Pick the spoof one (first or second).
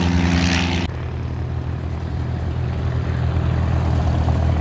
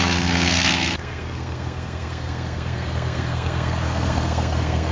second